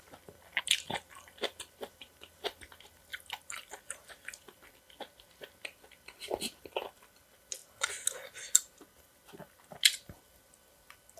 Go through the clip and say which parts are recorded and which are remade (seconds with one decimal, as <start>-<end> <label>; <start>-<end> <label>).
0.0-11.2 recorded